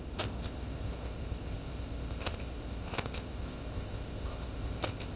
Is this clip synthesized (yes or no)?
yes